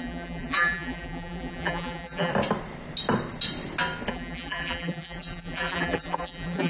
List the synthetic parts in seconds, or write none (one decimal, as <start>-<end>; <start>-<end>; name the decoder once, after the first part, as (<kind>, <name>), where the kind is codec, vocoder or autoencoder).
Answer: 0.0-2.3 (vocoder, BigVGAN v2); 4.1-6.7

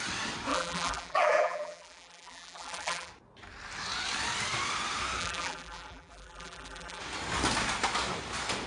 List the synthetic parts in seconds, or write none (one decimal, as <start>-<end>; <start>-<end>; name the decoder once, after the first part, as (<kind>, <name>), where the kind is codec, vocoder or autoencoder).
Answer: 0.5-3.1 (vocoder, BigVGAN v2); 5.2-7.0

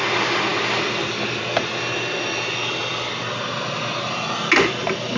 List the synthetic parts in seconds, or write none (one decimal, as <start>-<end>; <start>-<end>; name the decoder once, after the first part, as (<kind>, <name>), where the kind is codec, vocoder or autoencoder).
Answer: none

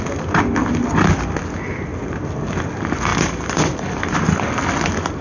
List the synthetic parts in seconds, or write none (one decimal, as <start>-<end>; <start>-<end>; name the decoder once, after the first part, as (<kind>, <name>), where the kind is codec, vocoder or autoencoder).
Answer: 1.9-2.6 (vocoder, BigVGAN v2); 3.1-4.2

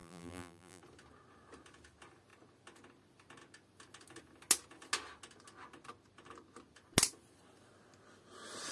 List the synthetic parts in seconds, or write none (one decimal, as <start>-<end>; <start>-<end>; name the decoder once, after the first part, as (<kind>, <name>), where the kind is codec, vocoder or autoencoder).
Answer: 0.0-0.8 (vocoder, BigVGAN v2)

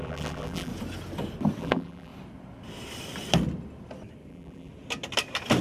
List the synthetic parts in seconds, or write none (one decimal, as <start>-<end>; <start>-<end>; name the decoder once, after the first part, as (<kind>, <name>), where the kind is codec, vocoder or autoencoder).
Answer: 0.0-0.7 (vocoder, BigVGAN v2); 1.6-2.1; 4.3-4.7

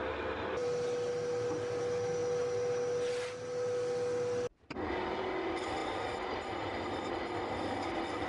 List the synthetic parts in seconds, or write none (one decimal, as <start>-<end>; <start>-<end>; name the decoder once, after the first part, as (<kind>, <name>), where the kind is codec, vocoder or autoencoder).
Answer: none

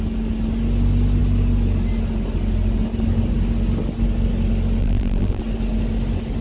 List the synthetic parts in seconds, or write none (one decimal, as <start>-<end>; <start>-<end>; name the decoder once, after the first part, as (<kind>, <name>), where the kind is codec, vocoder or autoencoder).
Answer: 4.8-5.4 (vocoder, BigVGAN v2)